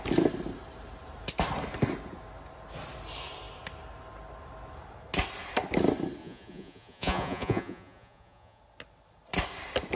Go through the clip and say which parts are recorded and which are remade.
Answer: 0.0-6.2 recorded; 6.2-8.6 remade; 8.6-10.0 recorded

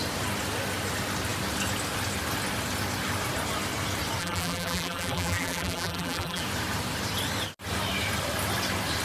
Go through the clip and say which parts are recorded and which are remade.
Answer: 0.0-4.2 recorded; 4.2-6.4 remade; 6.4-9.0 recorded

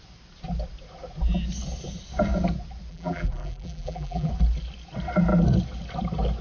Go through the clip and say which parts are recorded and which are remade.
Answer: 0.0-2.9 recorded; 2.9-4.3 remade; 4.3-6.4 recorded

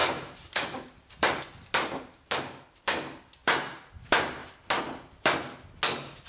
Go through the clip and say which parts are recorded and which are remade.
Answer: 0.0-0.8 remade; 0.8-3.4 recorded; 3.4-3.9 remade; 3.9-6.3 recorded

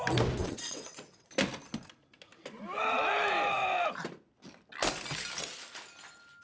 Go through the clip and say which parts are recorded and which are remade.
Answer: 0.0-0.4 recorded; 0.4-1.3 remade; 1.3-6.4 recorded

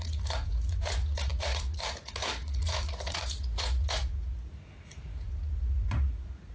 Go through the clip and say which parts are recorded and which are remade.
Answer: 0.0-6.5 remade

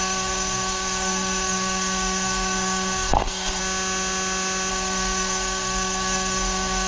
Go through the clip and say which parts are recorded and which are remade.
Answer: 0.0-3.6 remade; 3.6-4.7 recorded; 4.7-6.9 remade